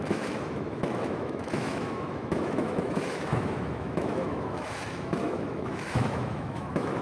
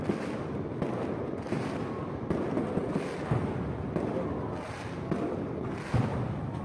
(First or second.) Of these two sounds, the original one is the second